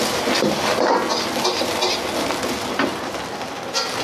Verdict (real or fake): real